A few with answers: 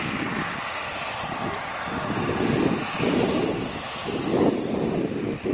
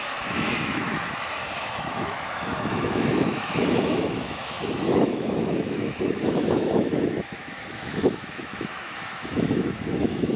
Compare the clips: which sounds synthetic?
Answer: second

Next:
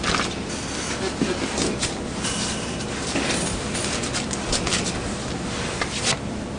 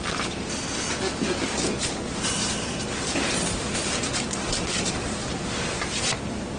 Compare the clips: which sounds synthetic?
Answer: second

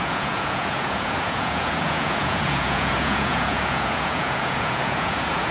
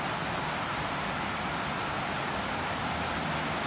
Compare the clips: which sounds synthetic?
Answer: first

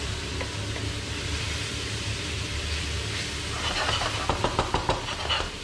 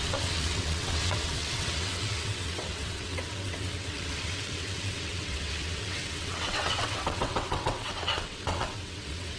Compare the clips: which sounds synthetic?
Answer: second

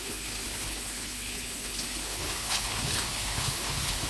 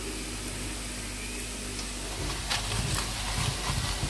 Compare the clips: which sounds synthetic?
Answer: first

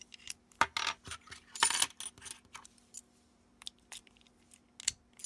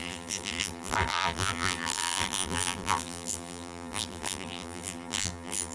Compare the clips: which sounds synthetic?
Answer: second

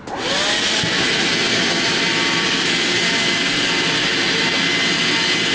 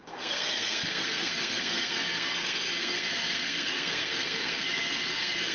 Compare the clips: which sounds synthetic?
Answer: second